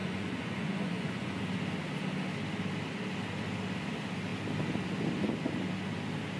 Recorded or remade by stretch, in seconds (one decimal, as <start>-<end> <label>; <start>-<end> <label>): 0.0-1.4 remade; 1.4-6.4 recorded